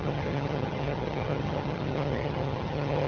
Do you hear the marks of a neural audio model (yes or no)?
yes